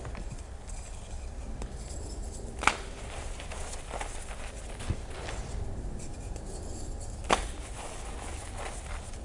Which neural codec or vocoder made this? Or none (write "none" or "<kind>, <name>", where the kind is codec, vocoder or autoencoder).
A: none